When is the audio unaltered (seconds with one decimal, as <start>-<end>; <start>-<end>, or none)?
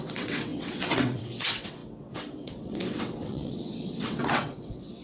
none